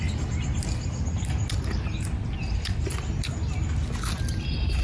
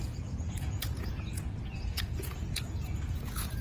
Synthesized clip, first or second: second